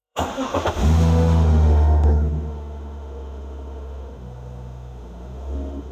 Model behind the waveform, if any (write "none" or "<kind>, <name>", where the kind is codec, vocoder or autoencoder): autoencoder, DAC-VAE